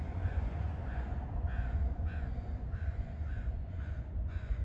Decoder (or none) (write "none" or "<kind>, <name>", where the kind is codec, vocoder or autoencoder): vocoder, Vocos